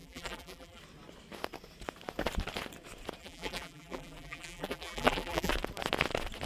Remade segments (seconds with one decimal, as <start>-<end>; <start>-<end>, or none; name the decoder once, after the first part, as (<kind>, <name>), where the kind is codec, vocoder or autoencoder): 0.0-0.8 (vocoder, BigVGAN v2); 3.2-5.5